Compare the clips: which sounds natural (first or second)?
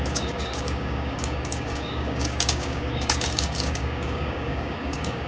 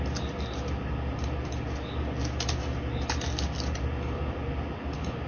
second